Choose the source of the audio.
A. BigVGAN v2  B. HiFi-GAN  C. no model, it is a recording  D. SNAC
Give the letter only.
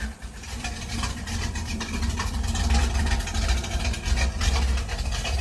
A